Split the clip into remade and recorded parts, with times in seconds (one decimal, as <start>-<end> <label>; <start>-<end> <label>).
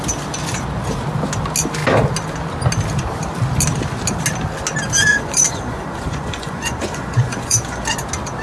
0.0-5.1 recorded; 5.1-7.9 remade; 7.9-8.4 recorded